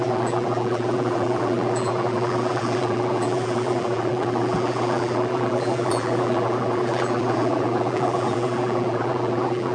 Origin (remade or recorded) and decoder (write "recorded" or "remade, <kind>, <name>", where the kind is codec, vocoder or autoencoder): remade, vocoder, BigVGAN v2